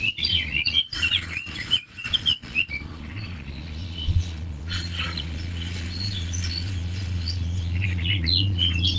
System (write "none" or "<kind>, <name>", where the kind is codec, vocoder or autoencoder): vocoder, Vocos